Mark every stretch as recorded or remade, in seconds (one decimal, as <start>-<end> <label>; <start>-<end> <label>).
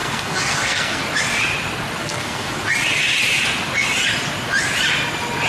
0.0-1.0 remade; 1.0-2.0 recorded; 2.0-2.6 remade; 2.6-5.5 recorded